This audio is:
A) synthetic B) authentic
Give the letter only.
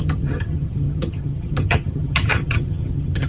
A